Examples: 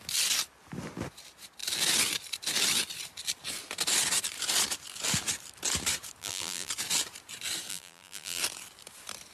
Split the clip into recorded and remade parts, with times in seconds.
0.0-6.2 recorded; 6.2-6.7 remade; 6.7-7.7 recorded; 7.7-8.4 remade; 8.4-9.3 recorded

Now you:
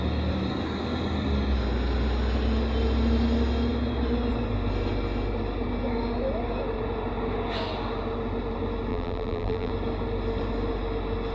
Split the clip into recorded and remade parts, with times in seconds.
0.0-8.9 recorded; 8.9-9.7 remade; 9.7-11.3 recorded

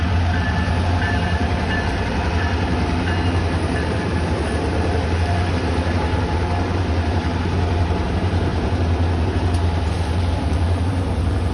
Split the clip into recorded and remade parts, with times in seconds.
0.0-11.5 remade

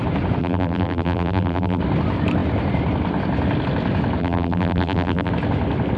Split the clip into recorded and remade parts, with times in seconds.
0.0-0.4 recorded; 0.4-1.8 remade; 1.8-4.2 recorded; 4.2-5.3 remade; 5.3-6.0 recorded

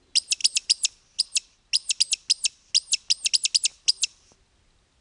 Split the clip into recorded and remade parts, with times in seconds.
0.0-0.4 recorded; 0.4-1.2 remade; 1.2-3.7 recorded; 3.7-4.4 remade; 4.4-5.0 recorded

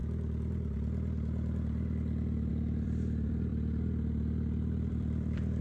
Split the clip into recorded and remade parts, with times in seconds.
0.0-2.5 recorded; 2.5-3.5 remade; 3.5-4.9 recorded; 4.9-5.6 remade

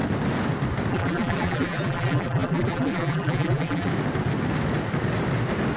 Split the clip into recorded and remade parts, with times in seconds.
0.0-0.9 recorded; 0.9-3.9 remade; 3.9-5.8 recorded